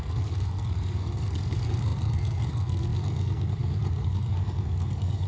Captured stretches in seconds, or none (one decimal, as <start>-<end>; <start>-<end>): none